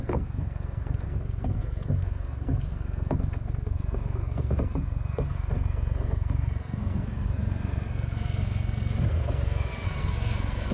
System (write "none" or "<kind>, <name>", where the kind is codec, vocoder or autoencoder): codec, SNAC